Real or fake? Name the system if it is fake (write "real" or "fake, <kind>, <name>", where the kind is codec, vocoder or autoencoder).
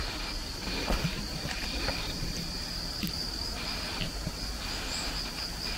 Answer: real